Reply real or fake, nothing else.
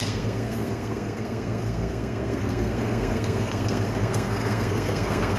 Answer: fake